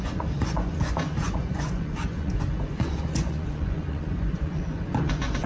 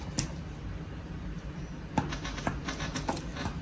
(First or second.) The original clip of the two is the second